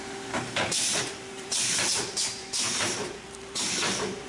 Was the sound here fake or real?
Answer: fake